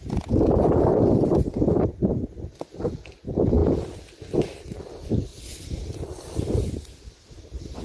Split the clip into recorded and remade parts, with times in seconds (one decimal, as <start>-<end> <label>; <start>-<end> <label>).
0.0-7.8 recorded